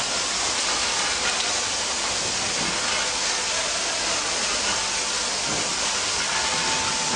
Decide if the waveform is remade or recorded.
recorded